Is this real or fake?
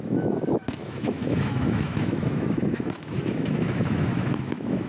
fake